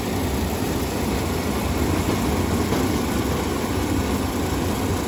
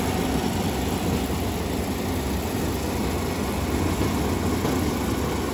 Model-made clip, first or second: first